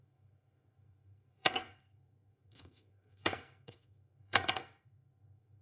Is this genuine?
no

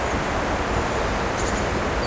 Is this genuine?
yes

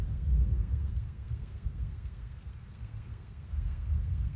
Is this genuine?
no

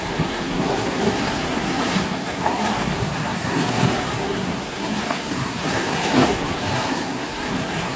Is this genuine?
no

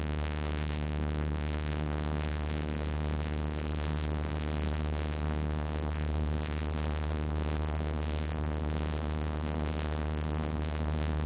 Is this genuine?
no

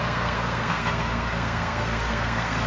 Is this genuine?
no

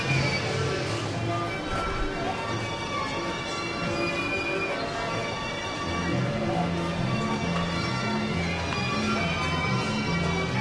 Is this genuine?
yes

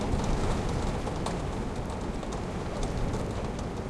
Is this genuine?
yes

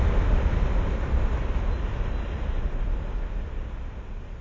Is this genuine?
yes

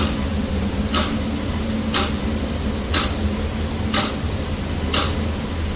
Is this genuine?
yes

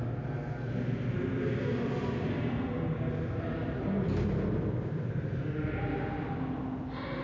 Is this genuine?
yes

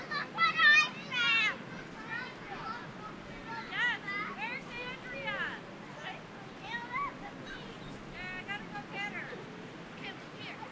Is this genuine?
yes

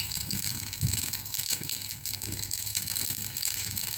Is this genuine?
no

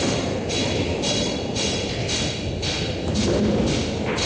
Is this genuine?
yes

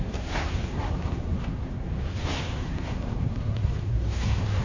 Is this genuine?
no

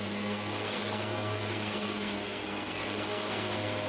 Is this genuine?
no